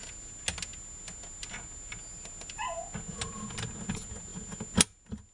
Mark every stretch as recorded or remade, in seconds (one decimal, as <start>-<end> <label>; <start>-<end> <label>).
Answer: 0.0-5.3 recorded